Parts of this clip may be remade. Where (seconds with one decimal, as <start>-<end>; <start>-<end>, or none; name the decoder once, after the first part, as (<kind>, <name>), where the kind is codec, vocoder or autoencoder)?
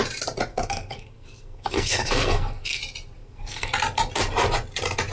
0.5-2.8 (codec, SNAC); 3.2-3.7